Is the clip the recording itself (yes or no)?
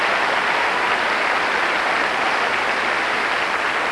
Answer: yes